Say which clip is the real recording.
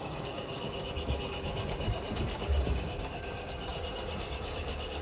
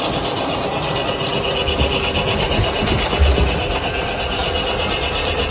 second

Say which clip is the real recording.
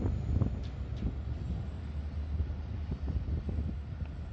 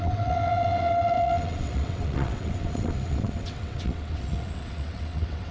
first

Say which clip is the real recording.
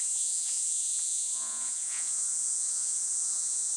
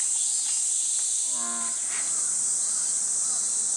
second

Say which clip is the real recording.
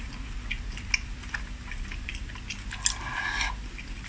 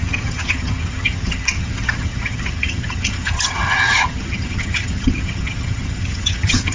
first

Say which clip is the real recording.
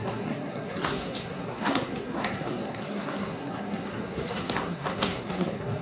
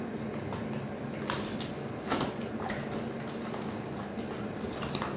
second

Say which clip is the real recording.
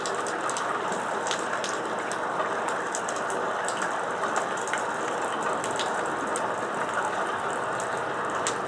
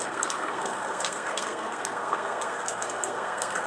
first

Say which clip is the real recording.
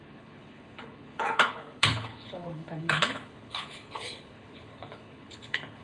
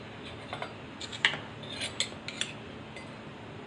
second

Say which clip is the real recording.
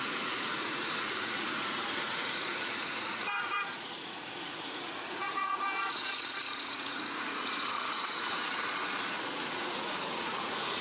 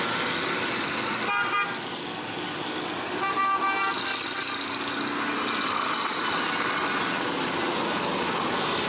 second